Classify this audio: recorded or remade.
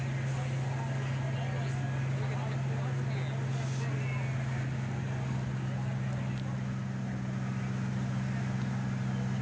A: recorded